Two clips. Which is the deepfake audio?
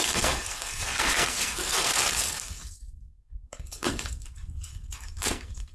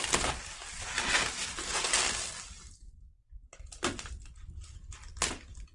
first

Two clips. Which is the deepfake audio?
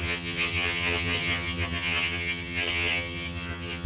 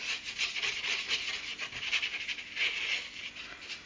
first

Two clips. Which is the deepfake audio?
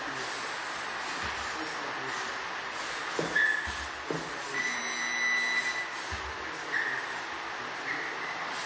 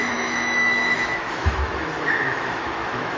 second